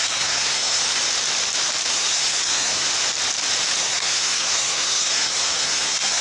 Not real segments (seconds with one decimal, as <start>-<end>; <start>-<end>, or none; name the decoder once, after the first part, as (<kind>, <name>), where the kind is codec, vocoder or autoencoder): 0.0-0.8 (codec, SNAC); 1.9-2.9; 3.8-6.2